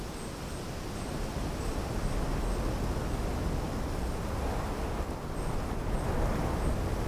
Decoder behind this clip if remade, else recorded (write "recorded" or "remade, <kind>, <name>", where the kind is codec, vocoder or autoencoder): recorded